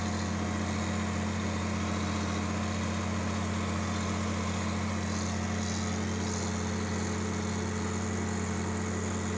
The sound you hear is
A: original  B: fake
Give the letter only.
A